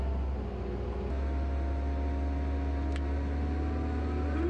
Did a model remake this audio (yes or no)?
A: no